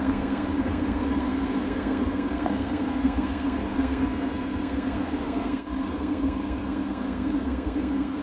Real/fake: fake